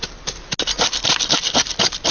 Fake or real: real